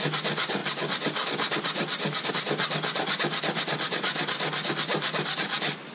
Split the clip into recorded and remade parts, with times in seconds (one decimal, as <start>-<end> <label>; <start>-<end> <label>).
0.0-5.9 recorded